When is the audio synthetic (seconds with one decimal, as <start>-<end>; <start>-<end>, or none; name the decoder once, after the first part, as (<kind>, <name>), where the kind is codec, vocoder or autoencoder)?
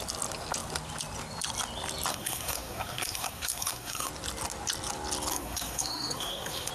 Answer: 2.1-4.1 (codec, SNAC); 5.3-6.7